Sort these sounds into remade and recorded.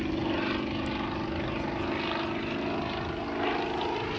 recorded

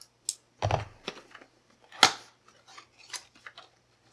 recorded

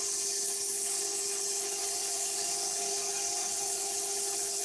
remade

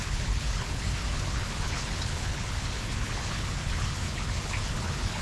remade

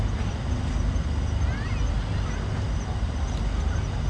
recorded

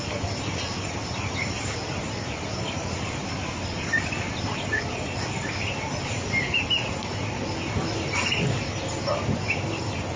recorded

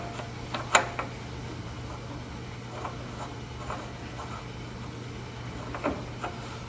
recorded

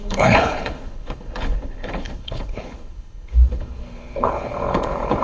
remade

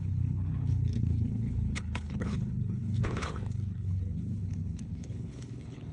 remade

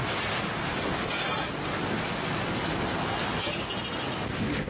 recorded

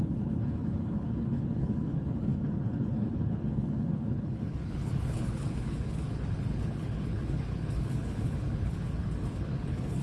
remade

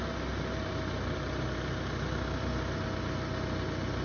recorded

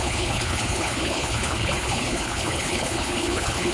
remade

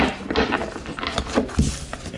recorded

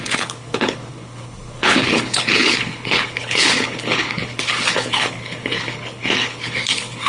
remade